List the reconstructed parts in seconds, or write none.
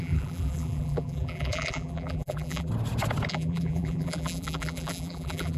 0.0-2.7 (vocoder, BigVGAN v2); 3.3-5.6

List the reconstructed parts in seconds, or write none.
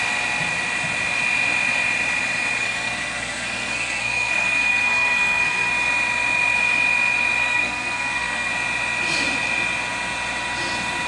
2.6-5.7 (codec, SNAC); 7.4-8.5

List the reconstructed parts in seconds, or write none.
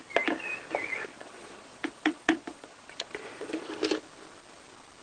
1.1-3.6 (vocoder, Vocos)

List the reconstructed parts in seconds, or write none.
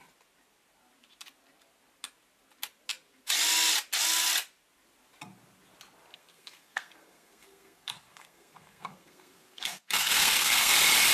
6.1-10.7 (codec, SNAC)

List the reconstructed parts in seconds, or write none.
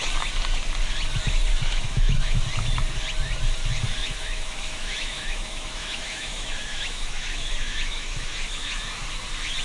1.5-2.4 (autoencoder, DAC-VAE); 4.0-9.0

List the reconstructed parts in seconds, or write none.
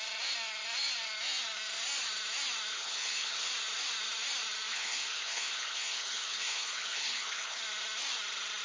2.7-3.5 (codec, HILCodec); 4.7-7.6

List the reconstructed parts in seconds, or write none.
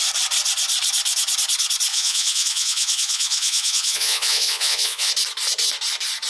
1.9-5.1 (vocoder, Vocos)